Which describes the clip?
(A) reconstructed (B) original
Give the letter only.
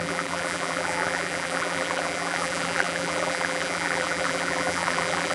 A